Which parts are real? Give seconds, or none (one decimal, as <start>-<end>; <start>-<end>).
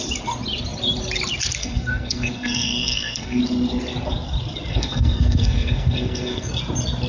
0.0-1.6; 3.4-4.7; 6.5-7.1